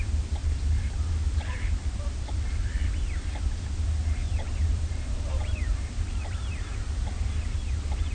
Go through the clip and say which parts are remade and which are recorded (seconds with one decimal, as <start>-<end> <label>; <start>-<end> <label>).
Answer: 0.0-0.4 recorded; 0.4-2.6 remade; 2.6-4.2 recorded; 4.2-8.1 remade